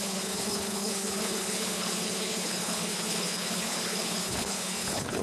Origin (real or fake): fake